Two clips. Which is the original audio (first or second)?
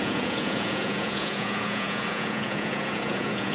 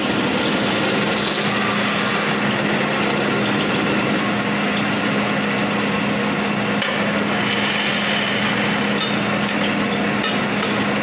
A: second